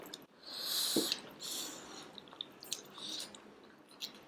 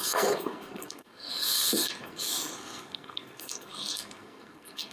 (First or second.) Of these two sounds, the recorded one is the first